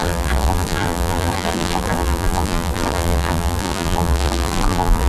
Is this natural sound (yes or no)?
no